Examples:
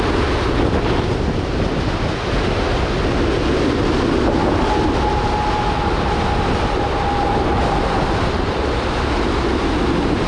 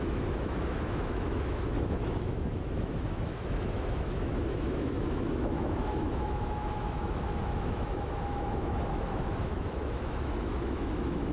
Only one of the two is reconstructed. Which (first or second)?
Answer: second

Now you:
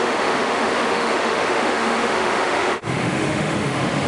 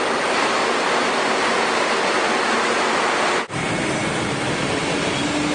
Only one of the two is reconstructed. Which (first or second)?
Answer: first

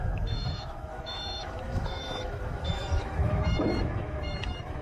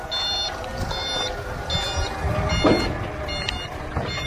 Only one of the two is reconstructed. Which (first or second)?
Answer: first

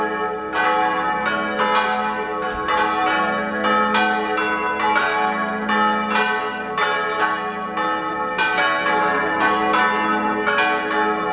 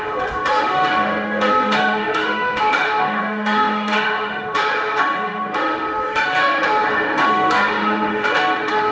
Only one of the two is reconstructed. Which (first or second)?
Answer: second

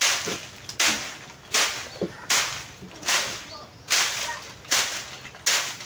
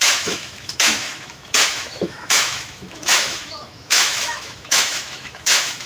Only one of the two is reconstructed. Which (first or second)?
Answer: second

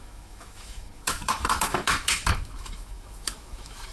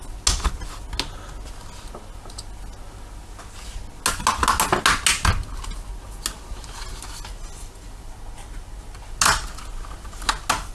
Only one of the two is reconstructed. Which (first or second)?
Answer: first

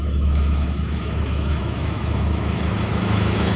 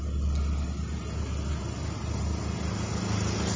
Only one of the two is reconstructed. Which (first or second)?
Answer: first